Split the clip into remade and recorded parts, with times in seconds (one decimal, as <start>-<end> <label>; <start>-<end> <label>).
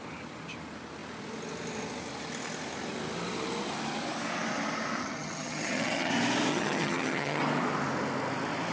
0.0-5.0 recorded; 5.0-6.1 remade; 6.1-6.5 recorded; 6.5-7.4 remade; 7.4-8.7 recorded